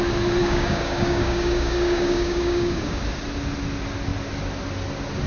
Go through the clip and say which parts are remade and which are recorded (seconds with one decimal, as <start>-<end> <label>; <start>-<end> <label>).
0.0-0.4 recorded; 0.4-3.0 remade; 3.0-5.3 recorded